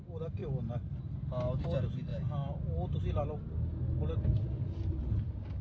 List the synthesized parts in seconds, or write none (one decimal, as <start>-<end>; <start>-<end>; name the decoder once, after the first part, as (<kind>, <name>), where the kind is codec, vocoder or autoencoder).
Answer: none